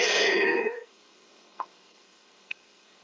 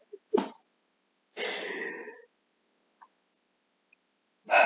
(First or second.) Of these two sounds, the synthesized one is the first